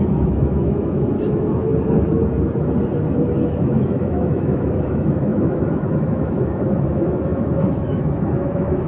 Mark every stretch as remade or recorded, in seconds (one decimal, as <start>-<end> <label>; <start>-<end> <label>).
0.0-1.7 remade; 1.7-3.1 recorded; 3.1-8.9 remade